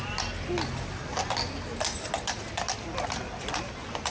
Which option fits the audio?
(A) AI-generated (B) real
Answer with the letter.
B